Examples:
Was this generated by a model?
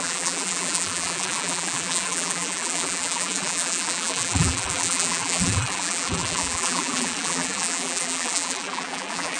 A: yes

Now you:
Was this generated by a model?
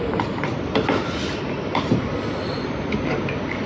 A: yes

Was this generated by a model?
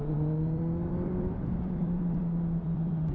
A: yes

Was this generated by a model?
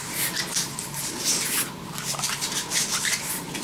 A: no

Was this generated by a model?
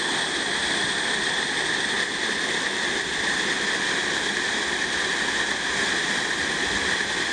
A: no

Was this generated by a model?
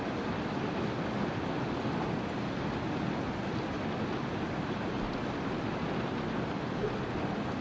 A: no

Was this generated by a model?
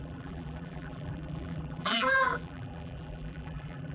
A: yes